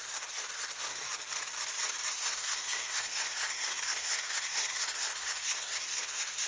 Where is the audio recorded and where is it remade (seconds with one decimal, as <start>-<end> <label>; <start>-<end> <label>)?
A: 0.0-1.0 remade; 1.0-2.1 recorded; 2.1-6.5 remade